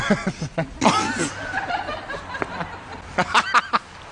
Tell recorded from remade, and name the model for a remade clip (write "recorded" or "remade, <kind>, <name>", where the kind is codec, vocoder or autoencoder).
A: recorded